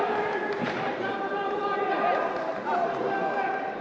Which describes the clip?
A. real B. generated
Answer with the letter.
A